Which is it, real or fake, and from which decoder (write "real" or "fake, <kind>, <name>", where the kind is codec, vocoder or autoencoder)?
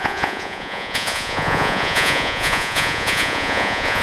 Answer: fake, vocoder, Vocos